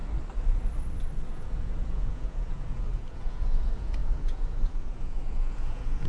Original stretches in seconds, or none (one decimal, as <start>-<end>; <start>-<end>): 0.0-1.3